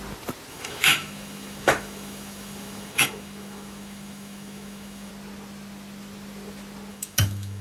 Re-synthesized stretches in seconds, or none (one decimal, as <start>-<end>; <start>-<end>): 0.5-5.1; 6.9-7.6